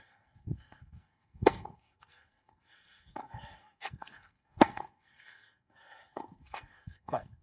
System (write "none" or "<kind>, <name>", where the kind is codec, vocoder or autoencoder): codec, SNAC